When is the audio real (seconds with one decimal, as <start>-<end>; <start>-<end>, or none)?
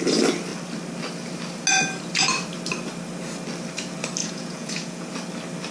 0.0-4.2; 5.1-5.7